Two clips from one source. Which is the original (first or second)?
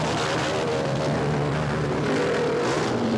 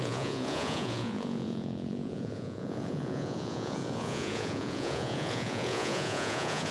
first